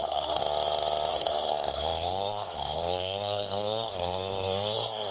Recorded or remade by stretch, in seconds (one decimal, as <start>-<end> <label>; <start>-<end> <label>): 0.0-0.4 remade; 0.4-1.1 recorded; 1.1-5.1 remade